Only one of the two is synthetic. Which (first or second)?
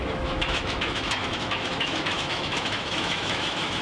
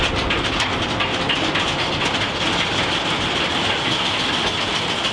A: first